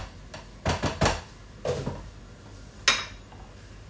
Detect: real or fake real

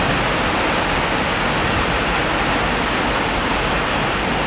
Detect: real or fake real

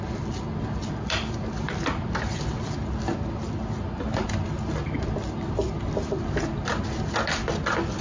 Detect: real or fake real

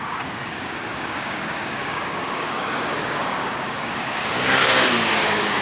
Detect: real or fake fake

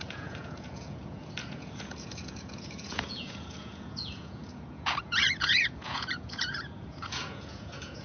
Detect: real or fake fake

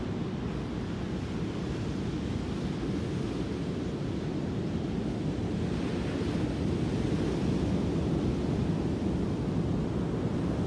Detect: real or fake real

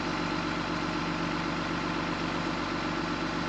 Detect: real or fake real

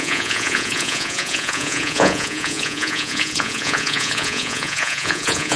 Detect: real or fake fake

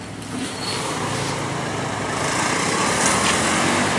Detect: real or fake real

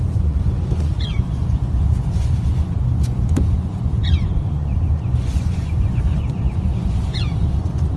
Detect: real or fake fake